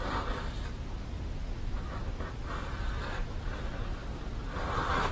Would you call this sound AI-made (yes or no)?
no